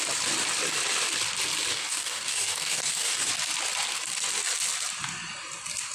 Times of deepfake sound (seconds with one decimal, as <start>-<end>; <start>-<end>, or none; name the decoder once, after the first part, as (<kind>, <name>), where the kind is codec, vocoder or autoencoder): 1.7-3.3 (codec, DAC)